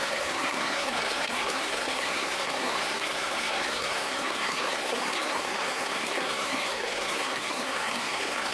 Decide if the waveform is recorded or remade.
remade